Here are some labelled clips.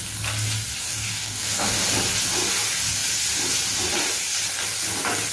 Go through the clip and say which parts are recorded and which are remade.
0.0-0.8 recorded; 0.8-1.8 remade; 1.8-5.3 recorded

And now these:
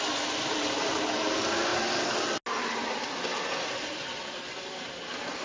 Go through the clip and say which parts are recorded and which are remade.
0.0-5.4 recorded